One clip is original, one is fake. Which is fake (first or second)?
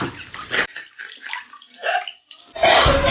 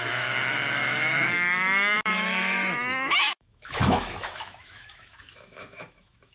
second